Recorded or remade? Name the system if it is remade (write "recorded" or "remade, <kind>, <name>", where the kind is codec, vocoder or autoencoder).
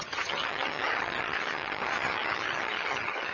remade, vocoder, HiFi-GAN